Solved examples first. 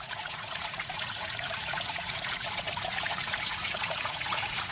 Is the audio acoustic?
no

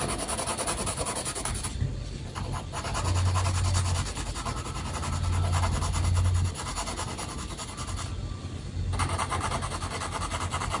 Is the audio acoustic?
yes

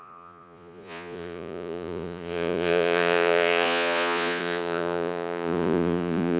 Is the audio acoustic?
no